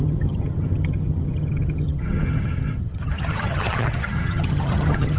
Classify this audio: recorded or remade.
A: remade